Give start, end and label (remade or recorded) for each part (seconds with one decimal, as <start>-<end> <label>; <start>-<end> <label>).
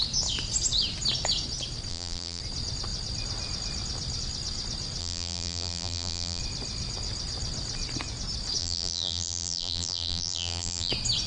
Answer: 0.0-1.9 recorded; 1.9-2.4 remade; 2.4-5.0 recorded; 5.0-6.4 remade; 6.4-8.6 recorded; 8.6-10.9 remade; 10.9-11.3 recorded